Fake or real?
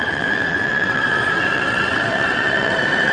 fake